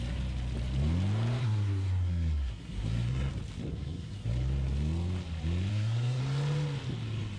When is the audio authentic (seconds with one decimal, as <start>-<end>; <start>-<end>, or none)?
0.0-1.4; 3.3-3.7; 4.3-5.7; 6.2-7.4

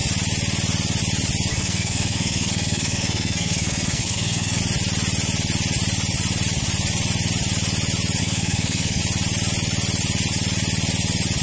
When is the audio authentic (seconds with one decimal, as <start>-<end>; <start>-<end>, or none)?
0.0-1.5; 4.6-8.2; 9.0-11.4